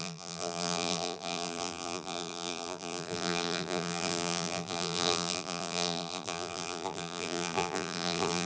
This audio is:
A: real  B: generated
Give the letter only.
B